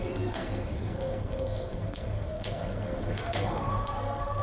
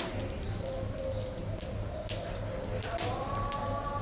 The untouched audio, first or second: second